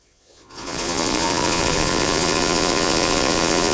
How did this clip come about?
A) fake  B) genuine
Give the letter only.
A